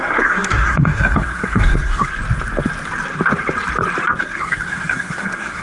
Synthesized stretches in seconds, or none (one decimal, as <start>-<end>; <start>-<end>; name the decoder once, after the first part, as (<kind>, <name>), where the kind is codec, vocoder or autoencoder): 0.0-2.1 (codec, SNAC); 4.2-5.6